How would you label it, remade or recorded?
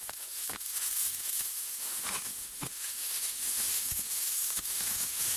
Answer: remade